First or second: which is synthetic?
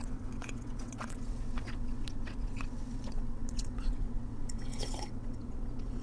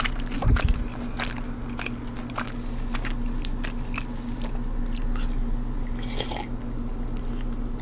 first